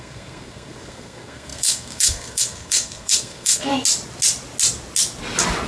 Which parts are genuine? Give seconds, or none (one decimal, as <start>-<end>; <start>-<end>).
3.7-5.7